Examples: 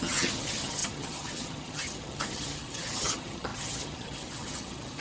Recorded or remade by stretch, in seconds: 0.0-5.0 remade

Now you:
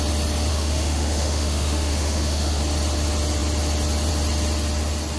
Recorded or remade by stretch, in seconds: 0.0-0.5 recorded; 0.5-2.6 remade; 2.6-5.2 recorded

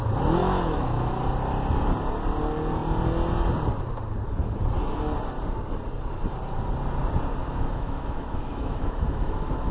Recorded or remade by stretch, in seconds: 0.0-0.4 recorded; 0.4-1.2 remade; 1.2-7.4 recorded; 7.4-9.7 remade

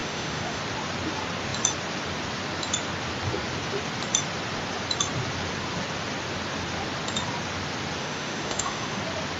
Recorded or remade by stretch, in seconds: 0.0-0.6 remade; 0.6-8.0 recorded; 8.0-9.0 remade; 9.0-9.4 recorded

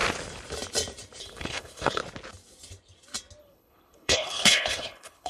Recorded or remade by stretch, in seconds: 0.0-1.2 recorded; 1.2-2.0 remade; 2.0-3.4 recorded; 3.4-5.3 remade